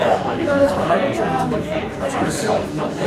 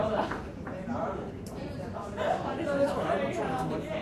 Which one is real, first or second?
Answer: second